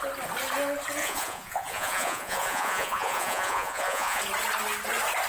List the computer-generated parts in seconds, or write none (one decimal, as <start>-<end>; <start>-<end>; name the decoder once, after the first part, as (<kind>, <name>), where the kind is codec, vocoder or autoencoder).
1.0-4.2 (vocoder, Vocos)